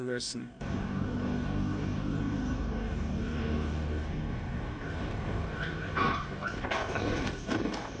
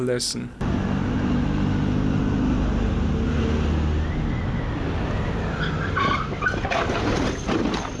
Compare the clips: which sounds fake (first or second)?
first